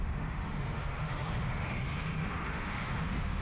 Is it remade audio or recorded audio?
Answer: remade